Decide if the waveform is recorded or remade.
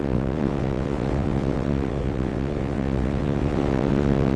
remade